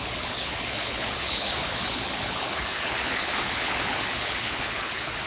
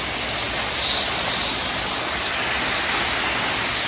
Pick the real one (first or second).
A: second